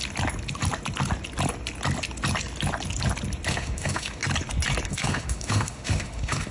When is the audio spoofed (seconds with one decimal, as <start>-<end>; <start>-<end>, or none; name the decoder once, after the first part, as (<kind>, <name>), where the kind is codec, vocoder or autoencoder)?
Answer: 3.5-4.2 (autoencoder, DAC-VAE); 4.9-6.5